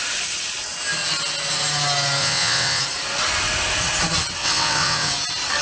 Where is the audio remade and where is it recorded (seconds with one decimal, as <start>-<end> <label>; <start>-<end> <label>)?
0.0-2.2 recorded; 2.2-2.8 remade; 2.8-4.4 recorded; 4.4-5.1 remade; 5.1-5.6 recorded